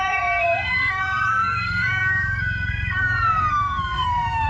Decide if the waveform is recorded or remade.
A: remade